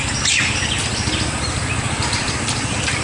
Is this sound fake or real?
fake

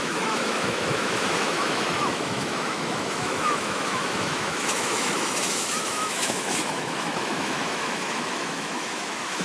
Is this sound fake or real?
fake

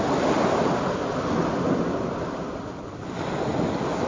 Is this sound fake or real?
real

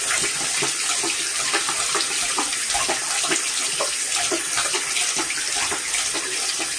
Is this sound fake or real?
real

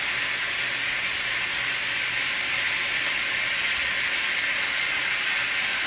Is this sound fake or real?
real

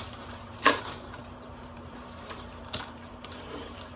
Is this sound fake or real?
fake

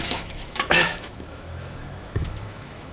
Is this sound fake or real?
fake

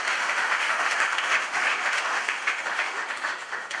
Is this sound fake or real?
fake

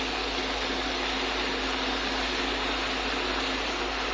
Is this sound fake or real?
real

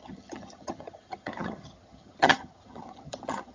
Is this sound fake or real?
fake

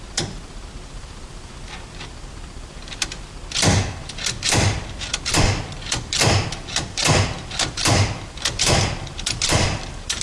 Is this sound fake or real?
fake